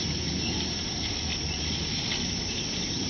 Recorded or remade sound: recorded